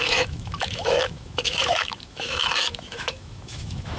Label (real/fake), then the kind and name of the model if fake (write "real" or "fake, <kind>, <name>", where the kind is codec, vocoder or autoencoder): fake, autoencoder, DAC-VAE